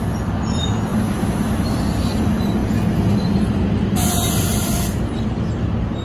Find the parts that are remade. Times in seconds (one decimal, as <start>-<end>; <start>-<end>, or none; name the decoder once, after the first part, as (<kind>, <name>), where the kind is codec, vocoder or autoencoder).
none